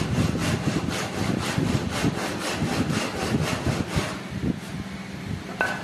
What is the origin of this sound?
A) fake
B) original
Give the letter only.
B